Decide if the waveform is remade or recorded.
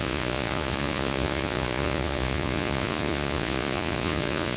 remade